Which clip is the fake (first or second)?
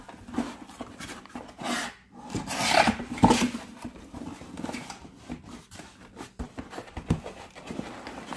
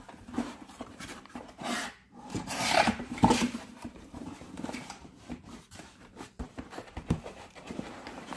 second